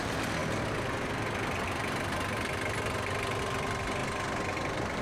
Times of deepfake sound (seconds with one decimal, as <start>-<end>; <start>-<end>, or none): none